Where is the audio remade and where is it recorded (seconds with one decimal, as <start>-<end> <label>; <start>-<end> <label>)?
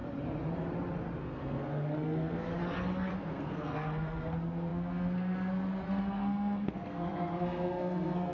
0.0-1.2 recorded; 1.2-2.5 remade; 2.5-3.1 recorded; 3.1-8.3 remade